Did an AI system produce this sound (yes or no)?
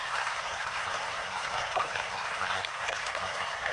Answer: yes